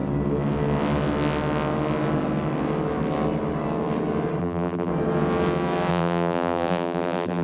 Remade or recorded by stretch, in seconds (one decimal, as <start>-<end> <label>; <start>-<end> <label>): 0.0-4.4 recorded; 4.4-4.9 remade; 4.9-5.9 recorded; 5.9-7.4 remade